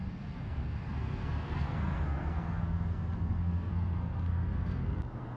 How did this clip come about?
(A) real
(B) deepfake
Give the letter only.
B